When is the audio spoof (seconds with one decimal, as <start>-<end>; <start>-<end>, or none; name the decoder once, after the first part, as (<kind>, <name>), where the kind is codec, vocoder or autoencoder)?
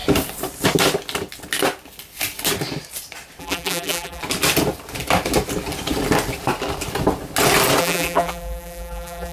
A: 3.4-4.2 (vocoder, BigVGAN v2); 7.8-9.3